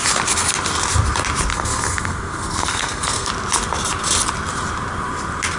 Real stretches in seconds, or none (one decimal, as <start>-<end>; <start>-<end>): 0.0-1.5; 3.3-5.6